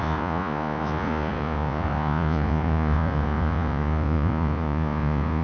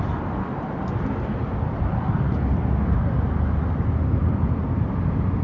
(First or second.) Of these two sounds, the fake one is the first